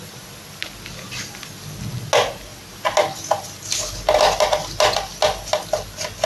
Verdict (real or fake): real